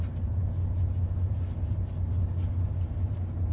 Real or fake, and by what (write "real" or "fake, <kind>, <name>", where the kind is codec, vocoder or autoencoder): real